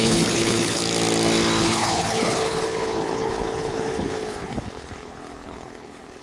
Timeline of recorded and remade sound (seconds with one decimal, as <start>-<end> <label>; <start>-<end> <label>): 0.0-0.8 remade; 0.8-1.6 recorded; 1.6-6.2 remade